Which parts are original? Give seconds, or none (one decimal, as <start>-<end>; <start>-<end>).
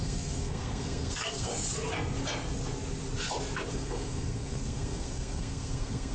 1.5-3.7